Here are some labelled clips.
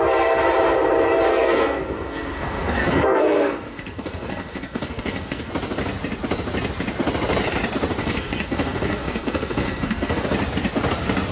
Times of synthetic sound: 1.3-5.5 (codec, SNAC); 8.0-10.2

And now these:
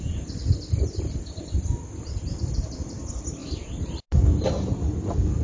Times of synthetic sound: none

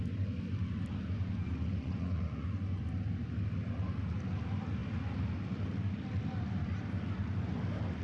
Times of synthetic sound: 1.7-2.8 (vocoder, Vocos)

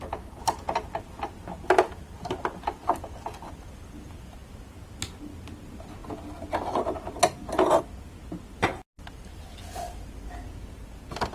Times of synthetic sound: none